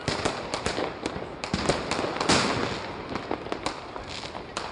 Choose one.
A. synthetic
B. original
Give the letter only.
B